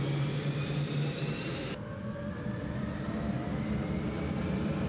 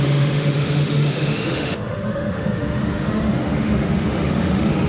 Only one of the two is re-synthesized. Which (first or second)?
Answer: second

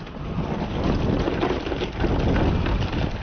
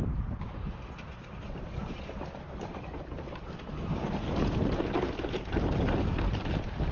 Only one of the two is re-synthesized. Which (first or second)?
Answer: second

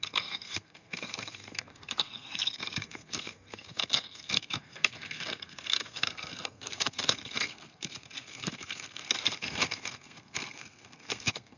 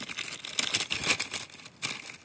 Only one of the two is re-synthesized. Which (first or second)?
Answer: first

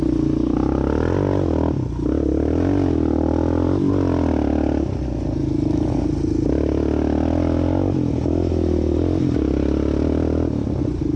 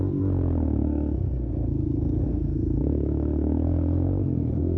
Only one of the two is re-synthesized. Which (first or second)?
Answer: second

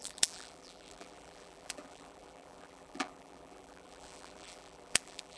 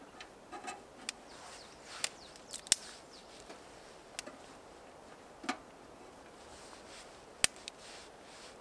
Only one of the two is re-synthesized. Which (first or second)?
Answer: first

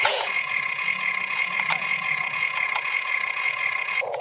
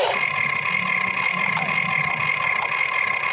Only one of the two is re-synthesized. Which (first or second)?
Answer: first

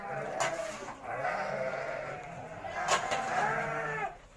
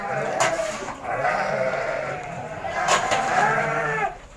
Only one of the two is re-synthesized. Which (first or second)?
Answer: second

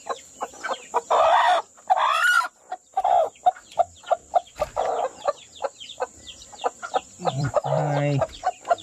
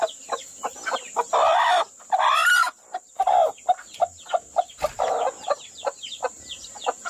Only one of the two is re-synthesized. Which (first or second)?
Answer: first